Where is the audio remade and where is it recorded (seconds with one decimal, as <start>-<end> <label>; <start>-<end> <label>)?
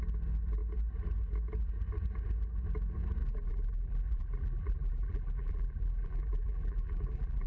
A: 0.0-3.2 recorded; 3.2-7.5 remade